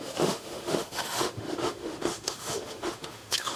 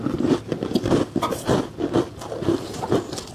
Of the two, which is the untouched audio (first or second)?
second